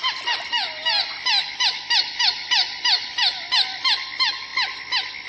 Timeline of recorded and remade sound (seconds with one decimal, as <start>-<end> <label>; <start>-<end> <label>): 0.0-5.3 recorded